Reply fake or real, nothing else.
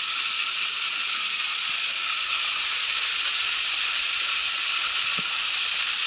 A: real